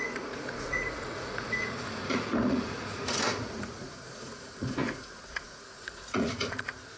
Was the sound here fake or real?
fake